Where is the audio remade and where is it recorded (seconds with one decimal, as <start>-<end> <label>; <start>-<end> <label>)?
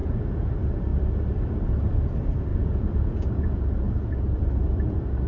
0.0-0.5 remade; 0.5-2.5 recorded; 2.5-3.6 remade; 3.6-5.3 recorded